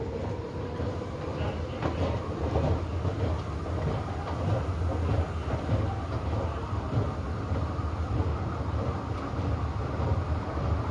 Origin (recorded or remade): recorded